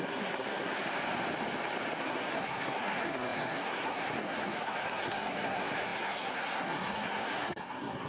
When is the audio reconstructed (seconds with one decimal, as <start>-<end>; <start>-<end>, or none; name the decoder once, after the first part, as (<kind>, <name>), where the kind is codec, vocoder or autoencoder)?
0.0-0.8 (codec, SNAC); 2.0-8.1